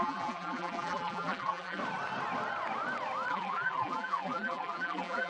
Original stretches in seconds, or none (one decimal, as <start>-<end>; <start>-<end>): 1.8-3.3